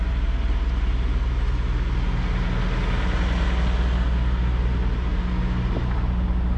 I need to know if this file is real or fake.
real